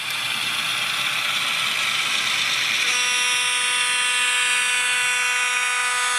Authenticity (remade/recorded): recorded